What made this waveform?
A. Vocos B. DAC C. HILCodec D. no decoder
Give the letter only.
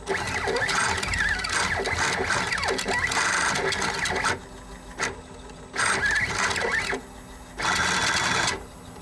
D